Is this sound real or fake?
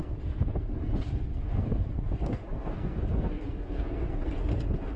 fake